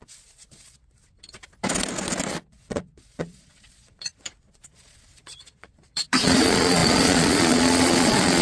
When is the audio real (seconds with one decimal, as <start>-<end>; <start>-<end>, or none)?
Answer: 1.0-2.3